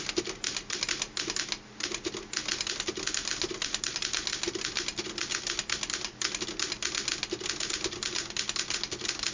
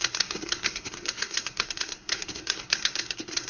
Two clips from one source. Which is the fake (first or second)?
second